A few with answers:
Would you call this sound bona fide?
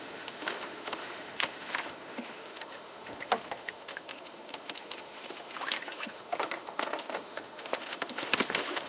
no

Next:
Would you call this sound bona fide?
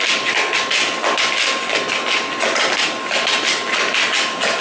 yes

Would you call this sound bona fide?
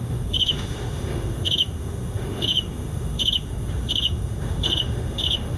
no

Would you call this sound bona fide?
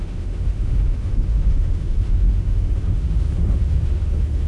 no